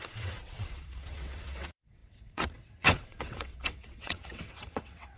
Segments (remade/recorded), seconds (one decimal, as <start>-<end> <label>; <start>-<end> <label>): 0.0-5.2 remade